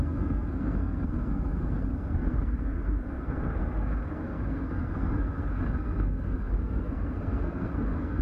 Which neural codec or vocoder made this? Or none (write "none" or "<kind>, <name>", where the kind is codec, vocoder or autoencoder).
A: codec, SNAC